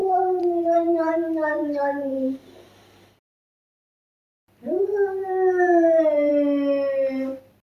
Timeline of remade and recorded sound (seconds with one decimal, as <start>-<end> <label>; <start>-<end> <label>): 0.0-1.1 remade; 1.1-2.0 recorded; 2.0-6.3 remade; 6.3-7.6 recorded